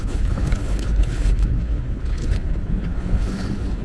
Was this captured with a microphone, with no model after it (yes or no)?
no